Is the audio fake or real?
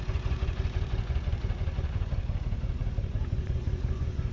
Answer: fake